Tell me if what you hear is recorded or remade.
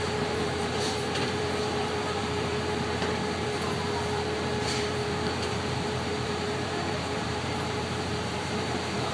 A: remade